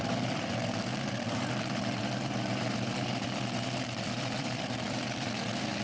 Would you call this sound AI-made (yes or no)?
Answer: yes